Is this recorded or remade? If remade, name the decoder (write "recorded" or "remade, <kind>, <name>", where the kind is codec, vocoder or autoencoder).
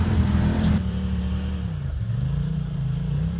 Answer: remade, vocoder, BigVGAN v2